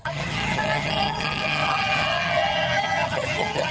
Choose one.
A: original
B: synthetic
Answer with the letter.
B